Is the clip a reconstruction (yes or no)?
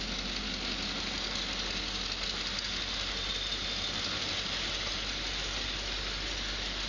no